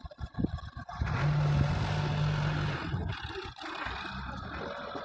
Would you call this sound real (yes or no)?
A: yes